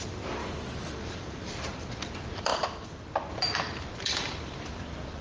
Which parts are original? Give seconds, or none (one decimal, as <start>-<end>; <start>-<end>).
none